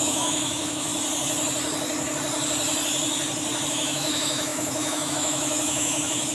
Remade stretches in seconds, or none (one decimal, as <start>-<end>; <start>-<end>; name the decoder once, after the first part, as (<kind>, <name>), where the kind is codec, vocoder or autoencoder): 0.0-0.9 (autoencoder, DAC-VAE); 3.7-6.3